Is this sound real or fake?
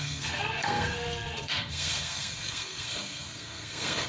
fake